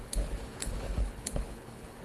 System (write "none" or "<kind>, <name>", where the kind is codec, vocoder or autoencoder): codec, HILCodec